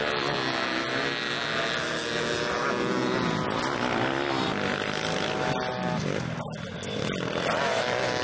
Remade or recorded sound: recorded